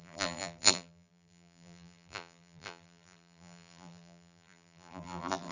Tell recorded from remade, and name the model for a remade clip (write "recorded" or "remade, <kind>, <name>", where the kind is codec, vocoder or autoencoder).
remade, vocoder, BigVGAN v2